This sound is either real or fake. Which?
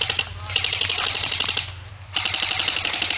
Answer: real